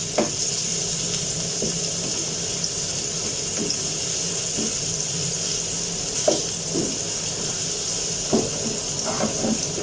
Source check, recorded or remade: recorded